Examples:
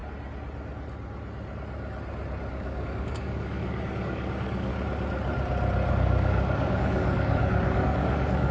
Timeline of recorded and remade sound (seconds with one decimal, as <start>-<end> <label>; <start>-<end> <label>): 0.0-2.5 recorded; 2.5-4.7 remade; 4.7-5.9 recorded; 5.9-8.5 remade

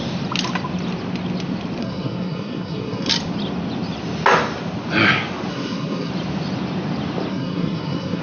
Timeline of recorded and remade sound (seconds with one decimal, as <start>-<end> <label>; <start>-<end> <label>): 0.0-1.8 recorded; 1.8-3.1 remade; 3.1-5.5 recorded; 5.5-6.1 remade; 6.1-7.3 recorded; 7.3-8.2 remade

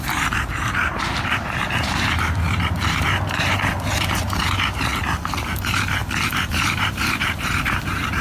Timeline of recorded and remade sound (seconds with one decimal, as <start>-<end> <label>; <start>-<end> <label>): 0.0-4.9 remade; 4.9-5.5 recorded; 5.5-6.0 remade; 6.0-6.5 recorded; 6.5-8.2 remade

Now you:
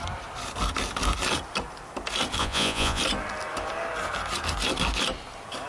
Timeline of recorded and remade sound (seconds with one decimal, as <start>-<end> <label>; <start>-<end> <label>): 0.0-2.4 recorded; 2.4-3.0 remade; 3.0-5.7 recorded

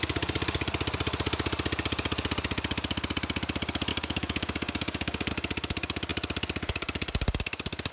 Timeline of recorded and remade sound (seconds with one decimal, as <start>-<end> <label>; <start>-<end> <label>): 0.0-3.9 recorded; 3.9-5.3 remade; 5.3-7.9 recorded

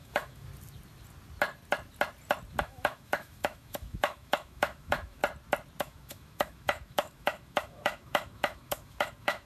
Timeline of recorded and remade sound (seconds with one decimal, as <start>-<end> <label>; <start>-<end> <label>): 0.0-0.5 remade; 0.5-2.6 recorded; 2.6-5.2 remade; 5.2-5.8 recorded; 5.8-9.5 remade

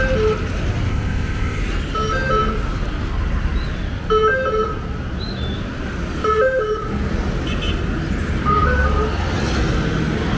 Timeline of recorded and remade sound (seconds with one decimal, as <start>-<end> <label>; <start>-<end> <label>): 0.0-0.9 recorded; 0.9-1.6 remade; 1.6-10.4 recorded

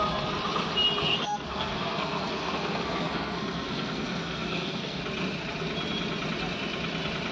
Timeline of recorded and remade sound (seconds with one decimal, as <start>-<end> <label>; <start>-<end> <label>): 0.0-1.0 recorded; 1.0-5.0 remade; 5.0-7.3 recorded